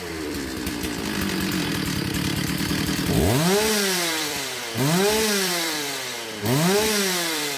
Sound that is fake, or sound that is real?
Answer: fake